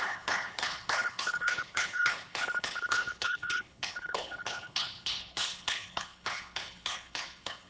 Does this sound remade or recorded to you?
remade